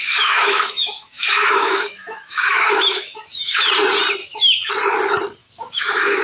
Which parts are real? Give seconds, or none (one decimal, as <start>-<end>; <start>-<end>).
3.7-4.2; 4.7-5.4